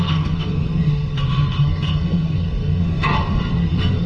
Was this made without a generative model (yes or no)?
no